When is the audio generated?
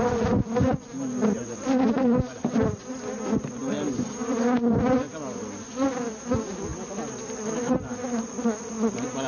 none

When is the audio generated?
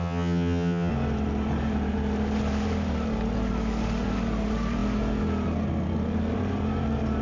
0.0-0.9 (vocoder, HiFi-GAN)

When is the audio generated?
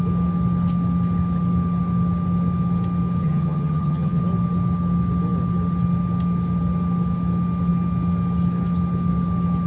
3.2-4.2 (vocoder, HiFi-GAN)